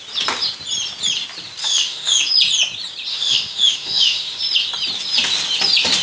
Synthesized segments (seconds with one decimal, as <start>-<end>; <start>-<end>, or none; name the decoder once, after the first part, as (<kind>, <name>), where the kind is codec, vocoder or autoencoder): 1.6-2.3 (autoencoder, DAC-VAE); 3.1-4.4